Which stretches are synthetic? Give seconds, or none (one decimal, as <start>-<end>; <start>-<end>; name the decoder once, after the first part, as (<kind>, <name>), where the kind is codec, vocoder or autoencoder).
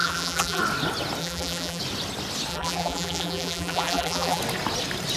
0.0-0.6 (vocoder, BigVGAN v2); 1.2-1.8; 2.5-4.4